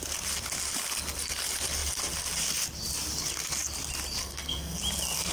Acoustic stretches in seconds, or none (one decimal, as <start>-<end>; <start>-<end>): 0.0-4.2; 4.8-5.3